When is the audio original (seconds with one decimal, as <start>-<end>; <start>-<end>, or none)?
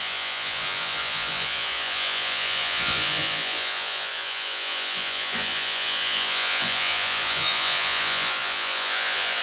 none